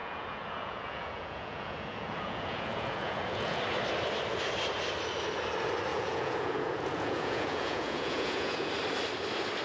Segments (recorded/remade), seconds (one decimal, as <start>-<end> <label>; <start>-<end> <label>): 0.0-3.6 remade; 3.6-5.9 recorded; 5.9-8.7 remade; 8.7-9.6 recorded